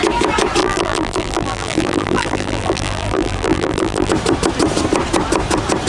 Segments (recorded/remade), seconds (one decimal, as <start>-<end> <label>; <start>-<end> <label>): 0.0-0.6 recorded; 0.6-4.1 remade; 4.1-5.9 recorded